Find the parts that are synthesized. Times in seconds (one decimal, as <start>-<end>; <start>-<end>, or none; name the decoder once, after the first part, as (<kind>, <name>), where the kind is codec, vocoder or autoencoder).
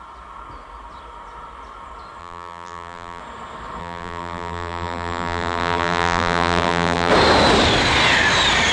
2.2-3.2 (vocoder, BigVGAN v2); 3.8-7.1